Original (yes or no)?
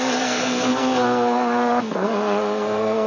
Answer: no